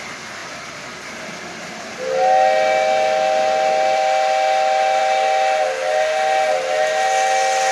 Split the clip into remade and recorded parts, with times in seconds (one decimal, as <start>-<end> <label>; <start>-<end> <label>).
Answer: 0.0-7.7 recorded